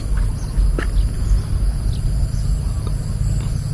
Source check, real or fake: real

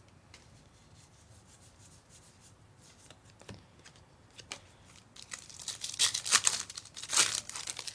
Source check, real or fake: fake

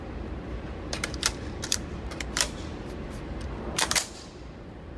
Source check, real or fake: fake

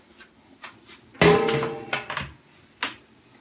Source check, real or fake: real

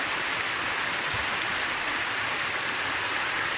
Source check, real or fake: fake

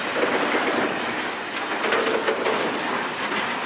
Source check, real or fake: real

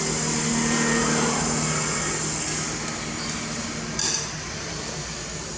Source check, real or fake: fake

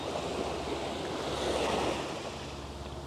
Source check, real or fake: real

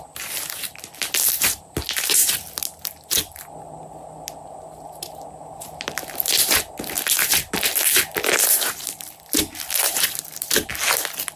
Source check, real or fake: real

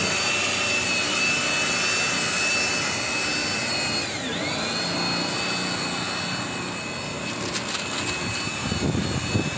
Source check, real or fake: real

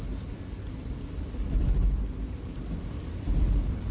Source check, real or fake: real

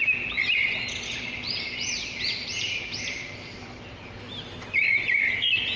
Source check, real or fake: fake